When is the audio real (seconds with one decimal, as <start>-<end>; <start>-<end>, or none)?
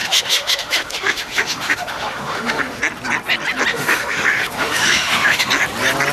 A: 2.8-3.7; 5.5-6.1